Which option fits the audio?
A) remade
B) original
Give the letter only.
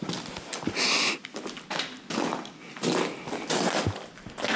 B